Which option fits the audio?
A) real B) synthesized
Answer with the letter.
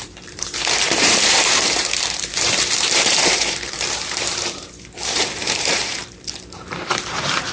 B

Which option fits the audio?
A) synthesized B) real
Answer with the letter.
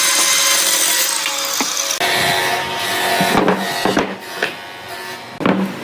B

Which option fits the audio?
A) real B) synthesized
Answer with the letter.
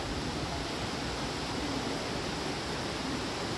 A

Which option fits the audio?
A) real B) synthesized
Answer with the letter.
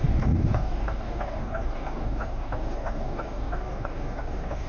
B